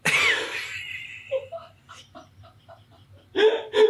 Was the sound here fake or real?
fake